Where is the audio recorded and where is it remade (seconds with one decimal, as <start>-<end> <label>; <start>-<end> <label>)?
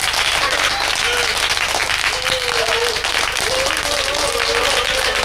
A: 0.0-5.2 recorded